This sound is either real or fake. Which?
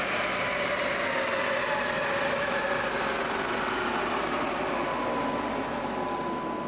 real